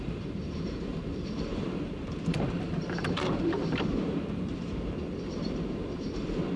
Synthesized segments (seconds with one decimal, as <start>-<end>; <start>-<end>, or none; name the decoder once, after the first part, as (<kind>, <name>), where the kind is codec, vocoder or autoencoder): 0.0-6.6 (vocoder, BigVGAN v2)